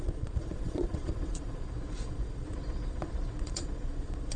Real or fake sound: fake